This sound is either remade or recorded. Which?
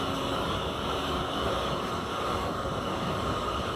remade